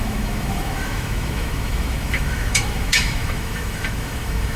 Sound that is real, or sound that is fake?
fake